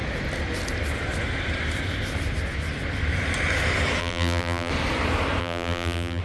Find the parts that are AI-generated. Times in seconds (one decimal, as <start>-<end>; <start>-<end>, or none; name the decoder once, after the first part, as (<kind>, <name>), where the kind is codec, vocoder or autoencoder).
4.0-4.7 (vocoder, BigVGAN v2); 5.4-6.2